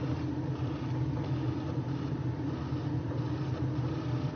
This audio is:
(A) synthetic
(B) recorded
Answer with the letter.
B